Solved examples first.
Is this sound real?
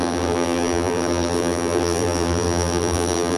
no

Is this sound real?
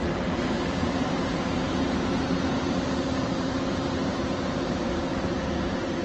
no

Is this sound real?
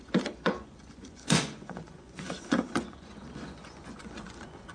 no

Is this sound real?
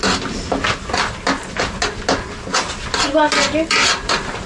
yes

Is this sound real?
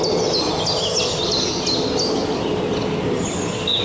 yes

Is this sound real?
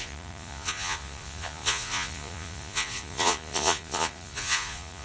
no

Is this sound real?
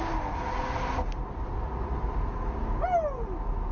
yes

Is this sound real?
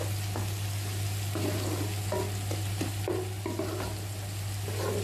yes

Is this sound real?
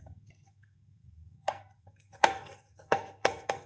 no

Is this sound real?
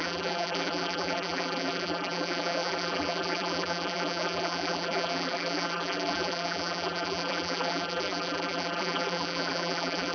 no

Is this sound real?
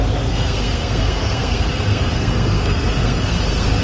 no